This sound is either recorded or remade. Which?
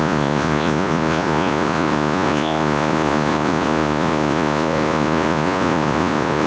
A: remade